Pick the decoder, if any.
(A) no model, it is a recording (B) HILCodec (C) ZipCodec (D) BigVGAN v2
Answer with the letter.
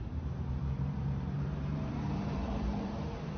D